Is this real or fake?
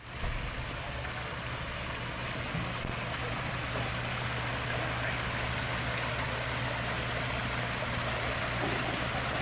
real